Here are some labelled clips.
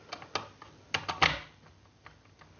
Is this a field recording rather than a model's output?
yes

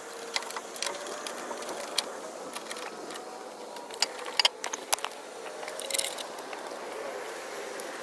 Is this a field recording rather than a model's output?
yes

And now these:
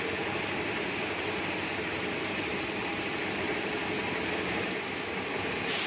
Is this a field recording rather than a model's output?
no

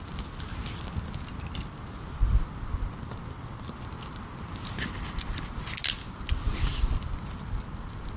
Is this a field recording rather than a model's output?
yes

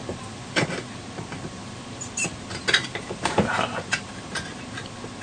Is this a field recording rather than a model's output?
yes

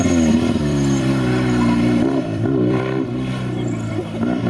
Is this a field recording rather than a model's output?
no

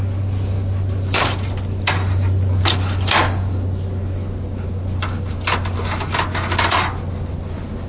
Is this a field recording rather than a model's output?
yes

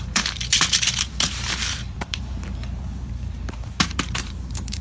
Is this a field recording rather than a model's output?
no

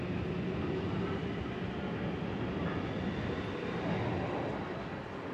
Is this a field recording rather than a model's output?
yes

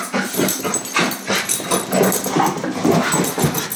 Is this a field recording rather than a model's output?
yes